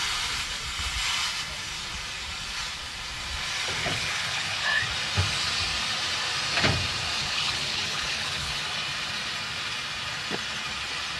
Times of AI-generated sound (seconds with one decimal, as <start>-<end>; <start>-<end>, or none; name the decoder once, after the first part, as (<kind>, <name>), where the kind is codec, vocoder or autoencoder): 3.8-4.8 (codec, HILCodec); 7.2-8.5